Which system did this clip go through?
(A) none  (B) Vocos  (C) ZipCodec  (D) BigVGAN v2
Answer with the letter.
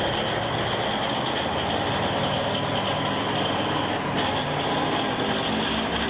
A